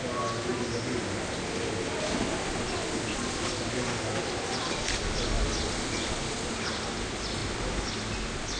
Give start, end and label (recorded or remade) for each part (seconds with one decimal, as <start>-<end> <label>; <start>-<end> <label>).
0.0-8.6 recorded